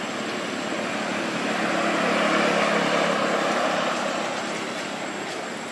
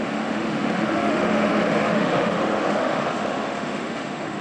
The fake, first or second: second